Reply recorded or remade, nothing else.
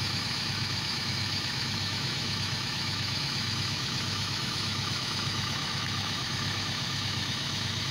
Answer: remade